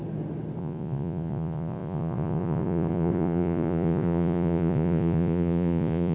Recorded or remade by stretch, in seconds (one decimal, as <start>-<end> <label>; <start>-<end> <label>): 0.0-0.6 recorded; 0.6-6.1 remade